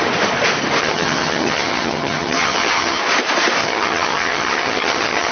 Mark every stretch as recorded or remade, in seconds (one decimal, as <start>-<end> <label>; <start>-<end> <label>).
0.0-0.8 recorded; 0.8-3.0 remade; 3.0-3.6 recorded; 3.6-5.3 remade